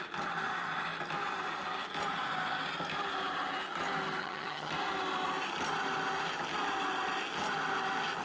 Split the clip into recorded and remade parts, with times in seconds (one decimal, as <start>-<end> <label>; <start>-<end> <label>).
0.0-4.2 recorded; 4.2-4.7 remade; 4.7-8.2 recorded